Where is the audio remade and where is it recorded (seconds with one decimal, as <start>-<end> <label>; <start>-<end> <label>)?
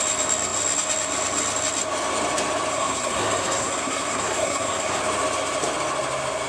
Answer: 0.0-2.7 recorded; 2.7-5.0 remade; 5.0-6.5 recorded